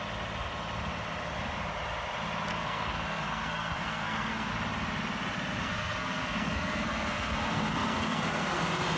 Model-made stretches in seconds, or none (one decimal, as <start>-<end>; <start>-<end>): 2.5-4.5; 5.6-8.6